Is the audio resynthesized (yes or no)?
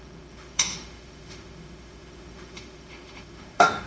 yes